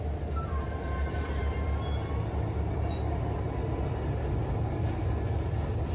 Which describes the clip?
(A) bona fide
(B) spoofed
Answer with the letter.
A